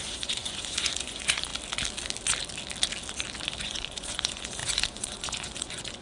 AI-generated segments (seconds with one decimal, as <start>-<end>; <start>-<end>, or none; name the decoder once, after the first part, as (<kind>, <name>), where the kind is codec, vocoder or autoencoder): 0.0-1.5 (vocoder, Vocos); 3.6-6.0